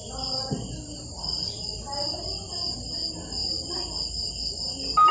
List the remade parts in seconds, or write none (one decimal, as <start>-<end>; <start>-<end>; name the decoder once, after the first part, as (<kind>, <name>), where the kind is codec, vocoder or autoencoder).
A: none